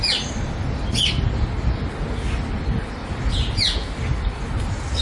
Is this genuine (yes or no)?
yes